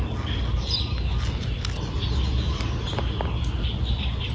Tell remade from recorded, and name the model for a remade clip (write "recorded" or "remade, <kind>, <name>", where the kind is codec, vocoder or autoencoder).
recorded